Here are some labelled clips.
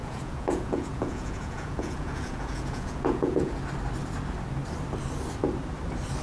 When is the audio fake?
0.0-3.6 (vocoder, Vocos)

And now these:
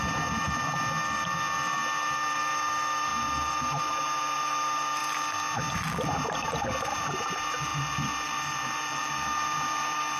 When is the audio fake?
0.0-5.0 (vocoder, BigVGAN v2); 6.4-10.2

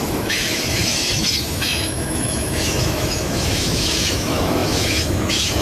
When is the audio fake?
0.0-5.6 (autoencoder, DAC-VAE)

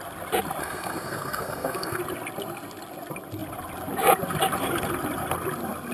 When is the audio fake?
0.6-2.0 (codec, SNAC)

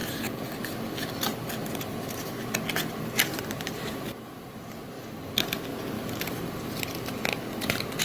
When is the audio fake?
1.6-2.3 (vocoder, BigVGAN v2); 3.3-5.0; 5.7-7.1

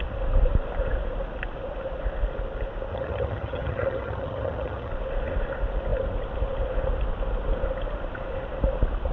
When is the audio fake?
2.9-4.9 (vocoder, HiFi-GAN)

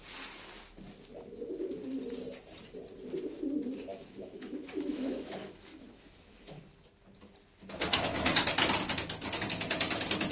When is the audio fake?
3.9-6.6 (autoencoder, DAC-VAE)